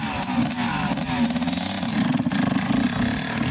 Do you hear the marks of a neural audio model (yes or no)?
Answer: no